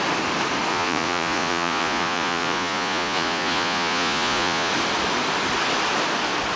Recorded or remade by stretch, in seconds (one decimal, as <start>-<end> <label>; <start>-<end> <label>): 0.0-0.7 recorded; 0.7-4.7 remade; 4.7-6.6 recorded